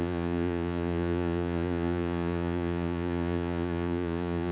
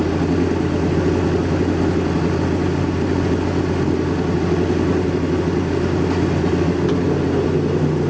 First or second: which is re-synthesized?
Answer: first